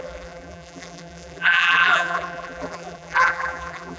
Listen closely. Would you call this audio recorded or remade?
remade